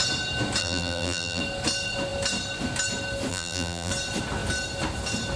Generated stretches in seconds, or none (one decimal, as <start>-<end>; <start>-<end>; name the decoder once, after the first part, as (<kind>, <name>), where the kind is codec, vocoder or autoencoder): 0.6-1.4 (vocoder, BigVGAN v2); 3.3-3.9